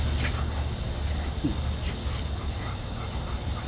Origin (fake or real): real